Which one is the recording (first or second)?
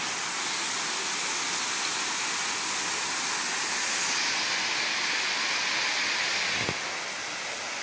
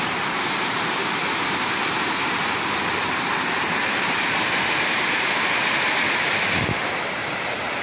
first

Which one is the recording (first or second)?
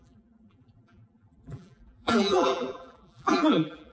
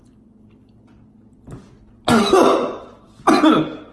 second